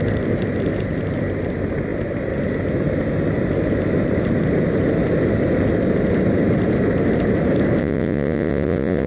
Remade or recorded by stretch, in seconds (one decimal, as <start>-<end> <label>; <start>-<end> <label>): 0.0-7.8 recorded; 7.8-9.1 remade